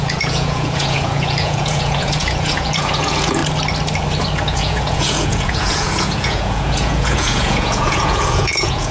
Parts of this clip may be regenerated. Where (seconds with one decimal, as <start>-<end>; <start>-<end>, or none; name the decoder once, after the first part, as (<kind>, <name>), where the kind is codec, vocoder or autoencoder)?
0.0-3.4 (vocoder, Vocos); 4.4-8.9